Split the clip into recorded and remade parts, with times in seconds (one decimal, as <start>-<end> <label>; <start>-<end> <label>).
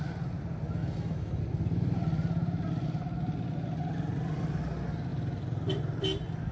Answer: 0.0-0.8 recorded; 0.8-1.4 remade; 1.4-6.5 recorded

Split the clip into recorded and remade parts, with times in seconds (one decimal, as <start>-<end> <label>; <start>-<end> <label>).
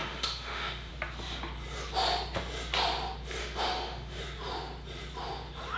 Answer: 0.0-0.9 remade; 0.9-3.4 recorded; 3.4-4.2 remade; 4.2-5.8 recorded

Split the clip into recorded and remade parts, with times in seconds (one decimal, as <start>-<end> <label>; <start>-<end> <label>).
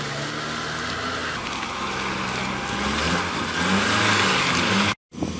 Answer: 0.0-5.4 recorded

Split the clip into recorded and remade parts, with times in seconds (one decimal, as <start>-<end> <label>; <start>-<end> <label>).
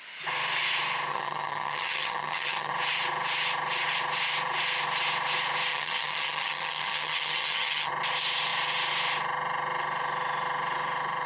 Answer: 0.0-1.1 recorded; 1.1-2.7 remade; 2.7-5.7 recorded; 5.7-7.9 remade; 7.9-11.3 recorded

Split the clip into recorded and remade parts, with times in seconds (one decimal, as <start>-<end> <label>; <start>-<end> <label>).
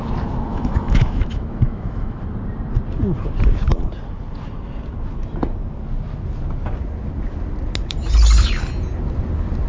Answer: 0.0-0.5 recorded; 0.5-2.2 remade; 2.2-9.7 recorded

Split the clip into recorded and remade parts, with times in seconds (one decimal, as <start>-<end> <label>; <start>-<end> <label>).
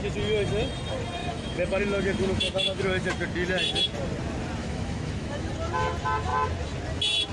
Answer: 0.0-1.2 recorded; 1.2-1.8 remade; 1.8-2.2 recorded; 2.2-3.1 remade; 3.1-4.6 recorded; 4.6-5.5 remade; 5.5-7.3 recorded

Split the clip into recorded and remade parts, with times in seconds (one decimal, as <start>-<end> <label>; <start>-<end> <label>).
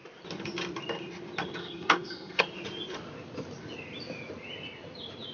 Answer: 0.0-1.6 recorded; 1.6-2.4 remade; 2.4-5.3 recorded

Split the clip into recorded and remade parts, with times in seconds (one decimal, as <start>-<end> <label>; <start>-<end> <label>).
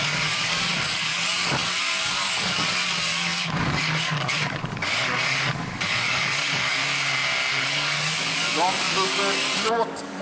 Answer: 0.0-6.8 remade; 6.8-7.5 recorded; 7.5-10.2 remade